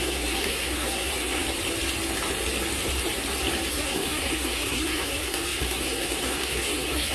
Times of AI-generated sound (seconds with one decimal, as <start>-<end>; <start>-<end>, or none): 0.0-1.4; 3.7-7.1